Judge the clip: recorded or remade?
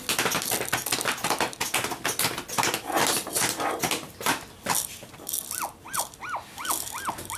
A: recorded